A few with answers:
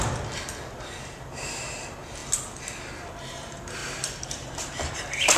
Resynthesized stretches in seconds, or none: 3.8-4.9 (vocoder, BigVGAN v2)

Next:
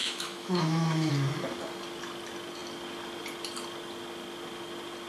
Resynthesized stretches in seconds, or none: 0.0-1.1 (autoencoder, DAC-VAE)